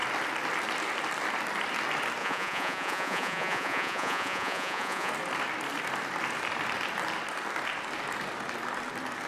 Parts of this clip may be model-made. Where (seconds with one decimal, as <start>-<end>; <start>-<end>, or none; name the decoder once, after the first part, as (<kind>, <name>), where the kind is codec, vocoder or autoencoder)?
2.2-5.1 (vocoder, Vocos)

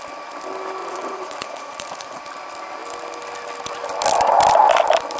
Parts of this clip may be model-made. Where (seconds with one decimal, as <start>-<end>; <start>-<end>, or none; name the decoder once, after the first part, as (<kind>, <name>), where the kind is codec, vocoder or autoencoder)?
0.8-2.2 (vocoder, Vocos)

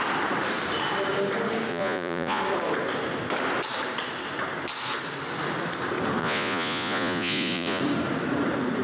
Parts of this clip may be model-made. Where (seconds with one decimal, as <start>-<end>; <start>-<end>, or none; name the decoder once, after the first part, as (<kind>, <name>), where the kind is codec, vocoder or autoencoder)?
1.7-2.4 (vocoder, Vocos); 6.2-7.8